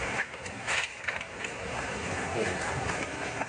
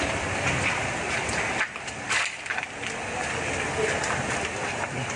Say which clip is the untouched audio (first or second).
second